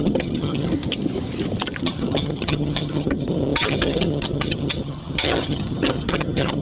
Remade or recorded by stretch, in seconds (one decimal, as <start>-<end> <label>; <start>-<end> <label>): 0.0-0.7 remade; 0.7-1.8 recorded; 1.8-6.6 remade